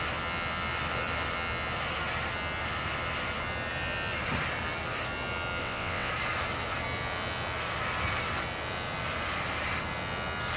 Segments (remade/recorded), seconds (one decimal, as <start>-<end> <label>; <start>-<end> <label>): 0.0-5.6 recorded; 5.6-6.1 remade; 6.1-10.6 recorded